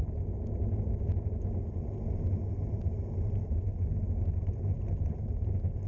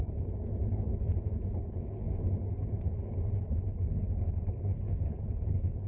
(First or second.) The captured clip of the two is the first